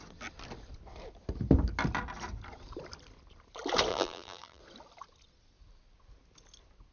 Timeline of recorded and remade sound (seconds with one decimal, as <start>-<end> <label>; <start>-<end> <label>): 0.0-3.9 recorded; 3.9-4.6 remade; 4.6-6.9 recorded